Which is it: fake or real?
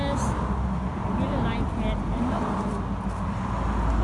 real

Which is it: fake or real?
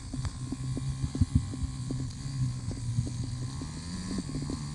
real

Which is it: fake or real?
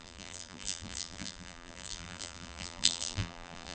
fake